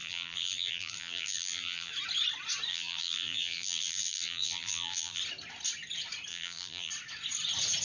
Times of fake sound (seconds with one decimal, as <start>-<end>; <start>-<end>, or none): 0.0-1.9; 2.7-5.2; 6.3-6.9